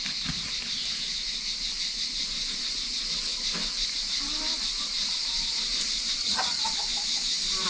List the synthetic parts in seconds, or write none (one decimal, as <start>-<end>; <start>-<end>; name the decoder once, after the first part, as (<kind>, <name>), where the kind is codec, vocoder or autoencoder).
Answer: 6.2-6.7 (vocoder, HiFi-GAN)